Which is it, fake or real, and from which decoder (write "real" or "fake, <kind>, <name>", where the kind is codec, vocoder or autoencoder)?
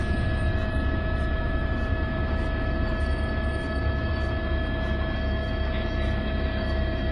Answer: fake, autoencoder, DAC-VAE